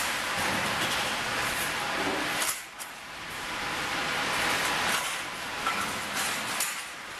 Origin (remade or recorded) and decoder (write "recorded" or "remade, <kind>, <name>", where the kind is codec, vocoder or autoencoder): recorded